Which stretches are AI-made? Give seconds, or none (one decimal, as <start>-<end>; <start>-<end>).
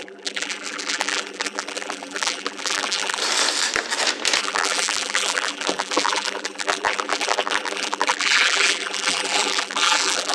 0.0-3.2; 4.4-10.3